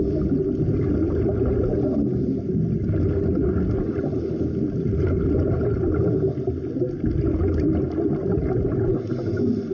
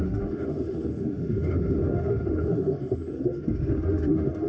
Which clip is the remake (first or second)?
second